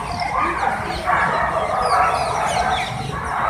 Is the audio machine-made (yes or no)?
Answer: no